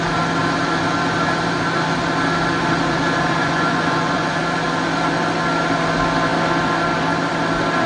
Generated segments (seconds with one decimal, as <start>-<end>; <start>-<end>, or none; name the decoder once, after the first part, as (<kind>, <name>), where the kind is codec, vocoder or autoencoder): 3.4-4.4 (vocoder, Vocos)